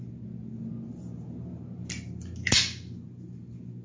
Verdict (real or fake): real